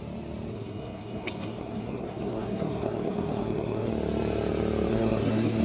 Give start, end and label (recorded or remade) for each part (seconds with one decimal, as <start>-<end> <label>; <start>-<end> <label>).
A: 0.0-0.5 recorded; 0.5-3.9 remade; 3.9-4.9 recorded; 4.9-5.6 remade